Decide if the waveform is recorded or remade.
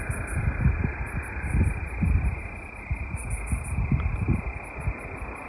recorded